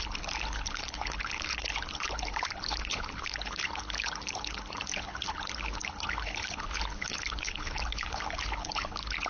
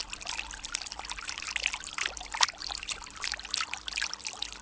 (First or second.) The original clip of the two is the second